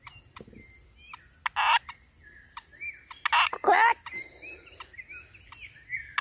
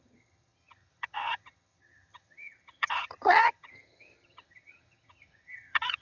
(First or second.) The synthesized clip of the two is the second